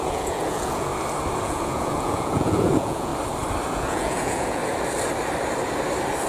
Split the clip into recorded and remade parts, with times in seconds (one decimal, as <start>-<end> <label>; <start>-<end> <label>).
0.0-0.9 remade; 0.9-1.4 recorded; 1.4-3.1 remade; 3.1-3.7 recorded; 3.7-4.6 remade; 4.6-6.3 recorded